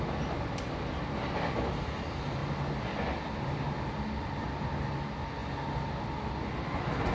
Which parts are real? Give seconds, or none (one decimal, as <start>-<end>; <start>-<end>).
0.0-7.1